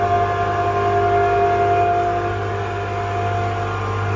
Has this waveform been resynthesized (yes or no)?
no